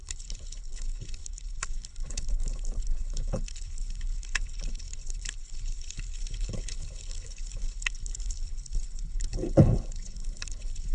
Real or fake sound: fake